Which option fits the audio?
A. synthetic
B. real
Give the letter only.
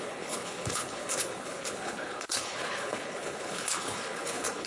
A